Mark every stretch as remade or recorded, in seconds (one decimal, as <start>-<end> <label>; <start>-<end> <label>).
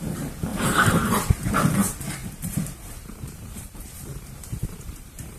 0.0-0.5 recorded; 0.5-1.5 remade; 1.5-2.2 recorded; 2.2-5.4 remade